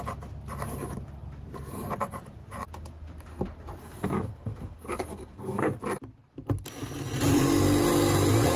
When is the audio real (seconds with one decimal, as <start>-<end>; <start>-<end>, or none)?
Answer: 0.0-3.8; 5.8-8.6